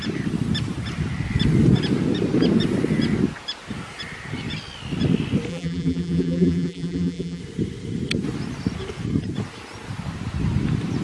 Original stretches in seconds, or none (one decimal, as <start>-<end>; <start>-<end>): 0.0-5.5; 7.4-11.0